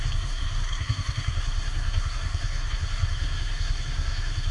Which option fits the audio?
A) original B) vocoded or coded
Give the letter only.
B